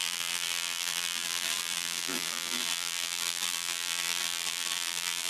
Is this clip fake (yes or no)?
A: yes